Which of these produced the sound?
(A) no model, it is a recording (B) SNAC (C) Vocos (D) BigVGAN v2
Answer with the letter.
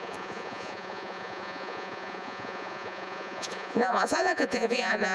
C